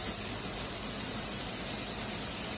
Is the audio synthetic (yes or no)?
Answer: no